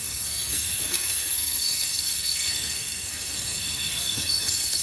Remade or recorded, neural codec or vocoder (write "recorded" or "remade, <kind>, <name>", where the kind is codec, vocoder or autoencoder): remade, codec, SNAC